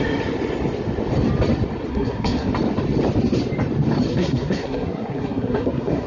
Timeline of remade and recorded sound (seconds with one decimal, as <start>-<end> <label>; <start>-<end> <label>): 0.0-1.9 recorded; 1.9-2.5 remade; 2.5-4.1 recorded; 4.1-6.1 remade